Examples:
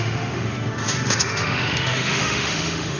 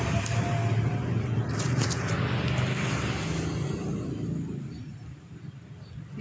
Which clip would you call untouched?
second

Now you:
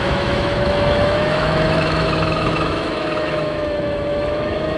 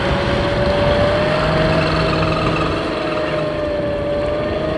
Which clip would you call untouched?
second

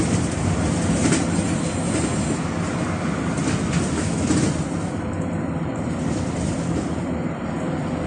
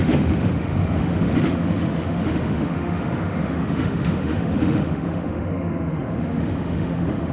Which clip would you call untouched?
first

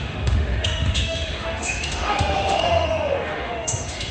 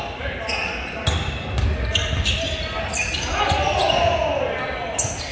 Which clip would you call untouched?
second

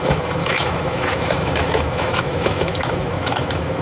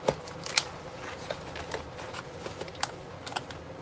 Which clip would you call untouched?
second